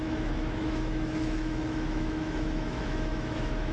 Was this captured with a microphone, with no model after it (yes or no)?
no